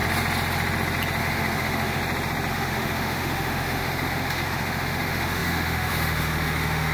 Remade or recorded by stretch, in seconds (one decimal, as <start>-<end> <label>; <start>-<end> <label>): 0.0-1.2 recorded; 1.2-2.0 remade; 2.0-2.5 recorded; 2.5-6.9 remade